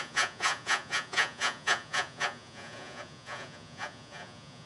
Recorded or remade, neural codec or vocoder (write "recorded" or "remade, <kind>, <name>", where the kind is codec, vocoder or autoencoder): remade, vocoder, Vocos